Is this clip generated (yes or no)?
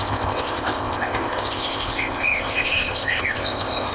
yes